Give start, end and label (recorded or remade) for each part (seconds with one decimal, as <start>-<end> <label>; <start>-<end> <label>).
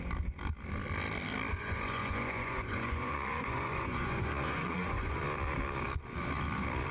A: 0.0-1.5 recorded; 1.5-5.2 remade; 5.2-6.9 recorded